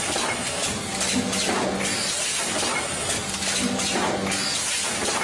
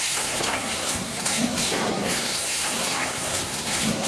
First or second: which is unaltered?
first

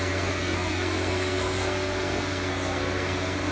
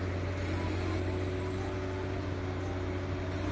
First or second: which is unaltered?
second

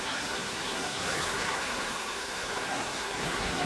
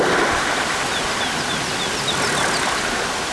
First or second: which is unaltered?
second